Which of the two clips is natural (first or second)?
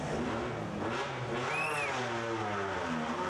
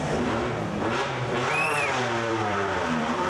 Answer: first